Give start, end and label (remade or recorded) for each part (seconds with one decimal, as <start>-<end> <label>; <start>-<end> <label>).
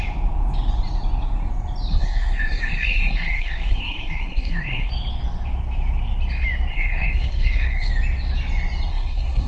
0.0-1.9 recorded; 1.9-4.9 remade; 4.9-6.7 recorded; 6.7-7.9 remade; 7.9-8.9 recorded; 8.9-9.5 remade